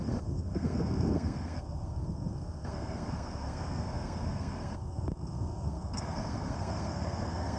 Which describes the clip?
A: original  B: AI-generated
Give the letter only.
B